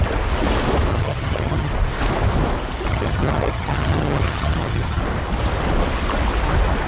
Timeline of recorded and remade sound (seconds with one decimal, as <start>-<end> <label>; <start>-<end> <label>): 0.0-0.9 recorded; 0.9-1.7 remade; 1.7-2.9 recorded; 2.9-5.0 remade; 5.0-6.9 recorded